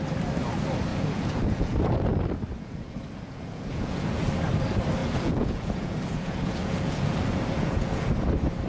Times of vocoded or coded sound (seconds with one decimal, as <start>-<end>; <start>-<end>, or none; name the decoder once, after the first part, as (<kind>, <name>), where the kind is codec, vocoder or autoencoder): 0.9-1.8 (vocoder, Vocos); 2.5-4.3; 5.0-8.1